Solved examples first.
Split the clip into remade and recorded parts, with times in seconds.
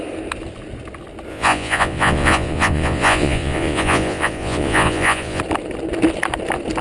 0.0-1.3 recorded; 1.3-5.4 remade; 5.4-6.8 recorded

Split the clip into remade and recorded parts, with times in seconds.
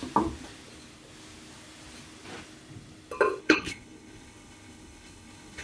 0.0-3.4 recorded; 3.4-5.6 remade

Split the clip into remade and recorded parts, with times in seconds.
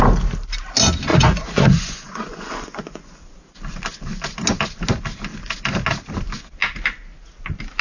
0.0-1.1 recorded; 1.1-3.1 remade; 3.1-7.8 recorded